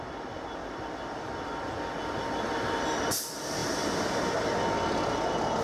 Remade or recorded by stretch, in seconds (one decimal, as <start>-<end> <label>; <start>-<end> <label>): 0.0-0.6 recorded; 0.6-1.8 remade; 1.8-5.6 recorded